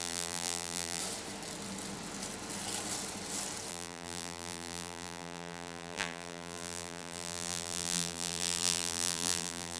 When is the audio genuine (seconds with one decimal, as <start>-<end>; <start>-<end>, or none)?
1.0-3.7